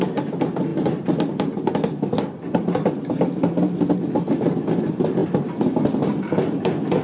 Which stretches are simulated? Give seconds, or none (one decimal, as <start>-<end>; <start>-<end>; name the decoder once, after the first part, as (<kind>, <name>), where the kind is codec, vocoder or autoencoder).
0.7-4.0 (vocoder, BigVGAN v2)